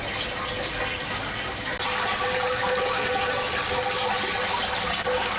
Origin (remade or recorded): recorded